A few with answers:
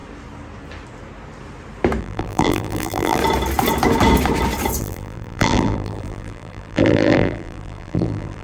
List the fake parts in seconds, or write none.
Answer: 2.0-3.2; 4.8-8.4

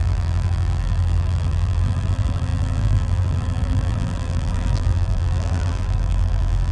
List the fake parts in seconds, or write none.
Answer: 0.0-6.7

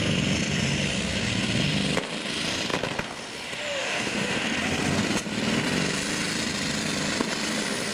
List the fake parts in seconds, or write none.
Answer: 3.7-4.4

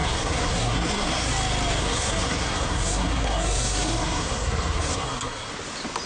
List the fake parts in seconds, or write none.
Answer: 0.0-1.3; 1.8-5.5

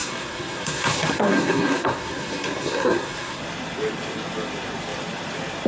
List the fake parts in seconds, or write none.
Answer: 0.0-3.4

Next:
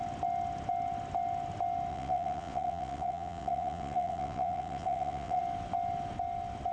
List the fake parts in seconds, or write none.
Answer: 1.9-5.4